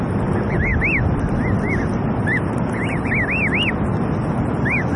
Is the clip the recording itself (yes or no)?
yes